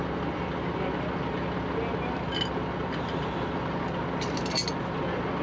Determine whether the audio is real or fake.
real